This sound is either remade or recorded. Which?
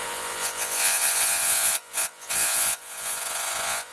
remade